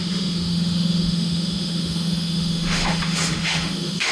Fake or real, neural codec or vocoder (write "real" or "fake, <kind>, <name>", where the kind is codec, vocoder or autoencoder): fake, autoencoder, DAC-VAE